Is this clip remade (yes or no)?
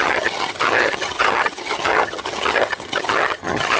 yes